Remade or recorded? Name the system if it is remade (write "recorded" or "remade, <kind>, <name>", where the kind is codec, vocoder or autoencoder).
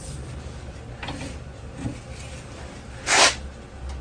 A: recorded